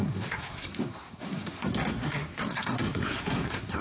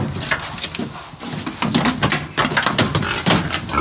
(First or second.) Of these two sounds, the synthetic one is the first